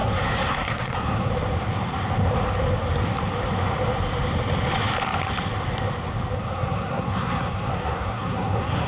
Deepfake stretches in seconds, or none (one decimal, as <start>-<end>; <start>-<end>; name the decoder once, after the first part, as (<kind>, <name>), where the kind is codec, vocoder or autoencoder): 0.0-1.3 (codec, SNAC); 6.4-8.9